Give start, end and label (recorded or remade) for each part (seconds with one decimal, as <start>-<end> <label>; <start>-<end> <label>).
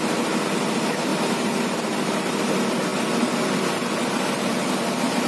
0.0-5.3 recorded